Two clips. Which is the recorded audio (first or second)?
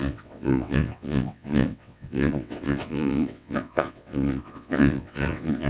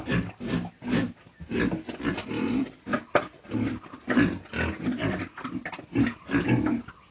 second